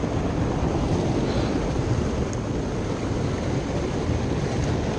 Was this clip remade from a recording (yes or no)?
no